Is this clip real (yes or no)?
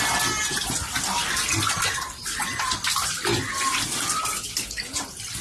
yes